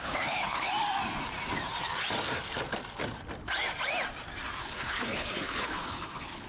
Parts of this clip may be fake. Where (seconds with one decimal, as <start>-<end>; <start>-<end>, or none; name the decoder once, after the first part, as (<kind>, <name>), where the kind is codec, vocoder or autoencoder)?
0.0-0.7 (codec, HILCodec); 4.6-6.5